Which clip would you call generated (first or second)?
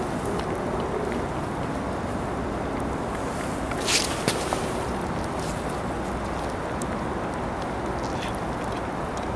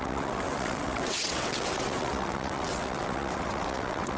second